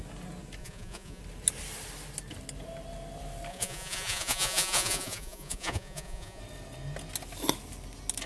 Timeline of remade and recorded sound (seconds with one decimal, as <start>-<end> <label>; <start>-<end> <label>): 0.0-0.6 recorded; 0.6-1.2 remade; 1.2-3.5 recorded; 3.5-6.4 remade; 6.4-8.3 recorded